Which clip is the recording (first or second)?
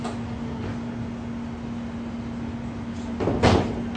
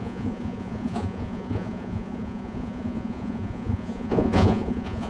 first